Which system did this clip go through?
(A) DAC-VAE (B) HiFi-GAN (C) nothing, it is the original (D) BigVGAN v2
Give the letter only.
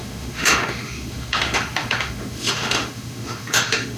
A